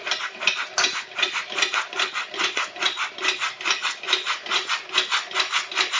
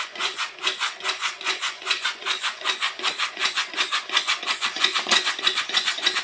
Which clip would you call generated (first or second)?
second